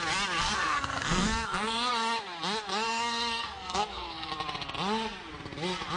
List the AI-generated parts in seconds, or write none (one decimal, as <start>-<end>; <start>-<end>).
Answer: 0.4-1.9; 2.7-4.3